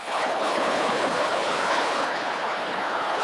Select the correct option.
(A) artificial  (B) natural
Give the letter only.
A